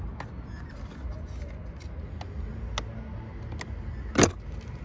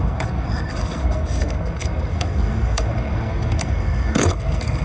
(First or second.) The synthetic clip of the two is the second